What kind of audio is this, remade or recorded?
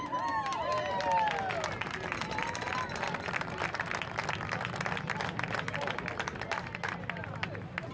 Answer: recorded